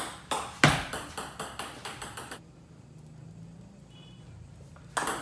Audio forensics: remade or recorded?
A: recorded